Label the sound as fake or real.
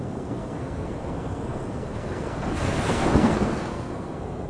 fake